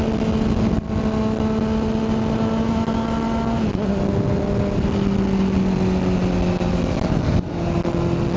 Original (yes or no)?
yes